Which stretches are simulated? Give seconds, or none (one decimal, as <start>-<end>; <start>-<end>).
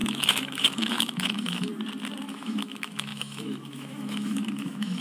0.0-1.7; 2.3-5.0